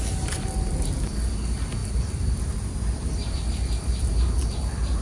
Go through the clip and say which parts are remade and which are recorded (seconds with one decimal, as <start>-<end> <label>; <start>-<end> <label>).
0.0-5.0 recorded